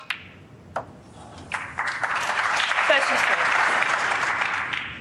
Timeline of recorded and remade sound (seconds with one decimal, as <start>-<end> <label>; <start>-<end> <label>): 0.0-1.3 recorded; 1.3-4.3 remade; 4.3-5.0 recorded